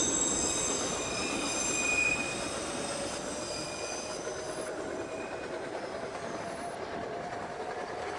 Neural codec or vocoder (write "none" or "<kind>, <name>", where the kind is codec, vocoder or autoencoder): none